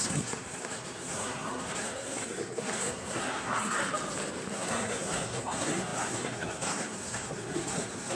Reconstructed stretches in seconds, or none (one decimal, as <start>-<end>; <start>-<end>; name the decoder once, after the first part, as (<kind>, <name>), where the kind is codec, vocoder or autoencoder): 0.0-3.8 (codec, SNAC); 4.5-8.1